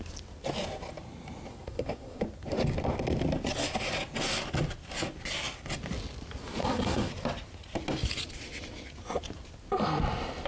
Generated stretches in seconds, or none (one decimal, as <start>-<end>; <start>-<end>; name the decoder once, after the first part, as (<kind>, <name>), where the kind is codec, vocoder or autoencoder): 1.5-2.2 (codec, SNAC); 6.6-7.1